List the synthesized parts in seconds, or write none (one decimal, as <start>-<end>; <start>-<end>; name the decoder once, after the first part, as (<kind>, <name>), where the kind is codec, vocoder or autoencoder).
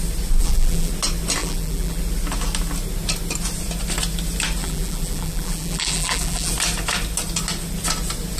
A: 0.4-0.9 (vocoder, BigVGAN v2); 1.4-2.0; 4.6-6.5